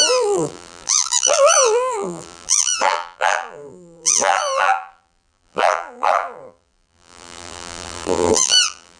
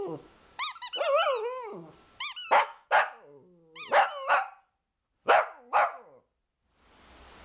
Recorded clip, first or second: second